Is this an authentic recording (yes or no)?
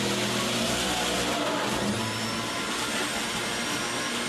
yes